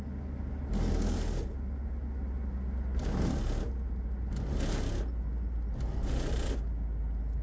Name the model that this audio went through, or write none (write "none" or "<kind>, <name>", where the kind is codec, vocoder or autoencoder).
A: none